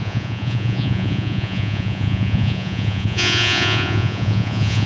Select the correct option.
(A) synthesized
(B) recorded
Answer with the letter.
A